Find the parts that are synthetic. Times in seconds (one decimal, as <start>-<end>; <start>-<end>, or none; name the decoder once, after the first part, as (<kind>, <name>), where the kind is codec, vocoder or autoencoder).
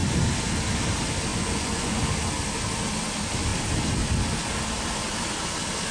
1.3-2.0 (vocoder, Vocos)